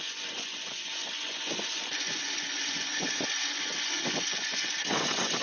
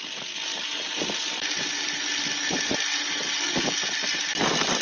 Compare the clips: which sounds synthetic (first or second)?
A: first